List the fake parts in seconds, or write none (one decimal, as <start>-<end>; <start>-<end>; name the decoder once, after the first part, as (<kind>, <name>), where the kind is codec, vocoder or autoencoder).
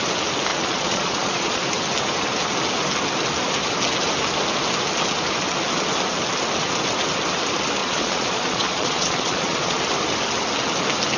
0.5-1.6 (vocoder, Vocos); 7.8-9.8